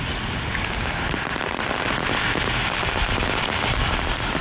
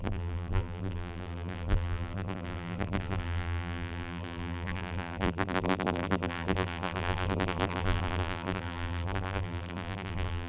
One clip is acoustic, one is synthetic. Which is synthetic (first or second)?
second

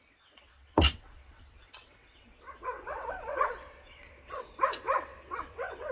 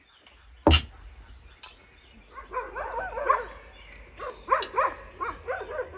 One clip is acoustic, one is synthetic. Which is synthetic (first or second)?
first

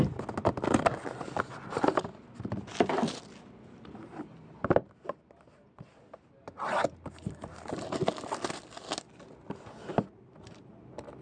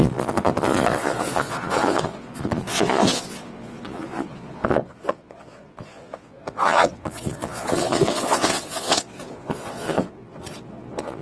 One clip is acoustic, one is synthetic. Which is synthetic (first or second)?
second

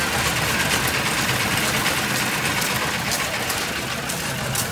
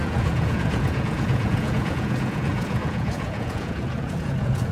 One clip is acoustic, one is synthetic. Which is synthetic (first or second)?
second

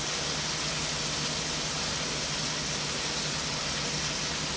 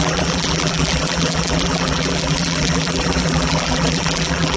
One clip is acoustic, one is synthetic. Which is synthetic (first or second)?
second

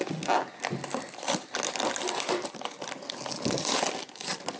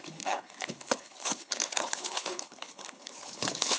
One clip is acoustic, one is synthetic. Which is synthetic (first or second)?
second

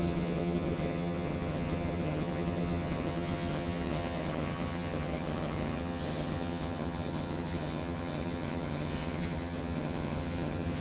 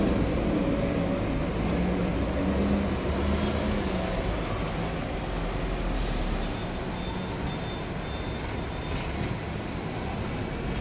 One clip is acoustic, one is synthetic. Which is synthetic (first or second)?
first